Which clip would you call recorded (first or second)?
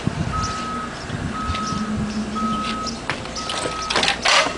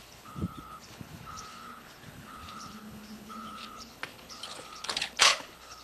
first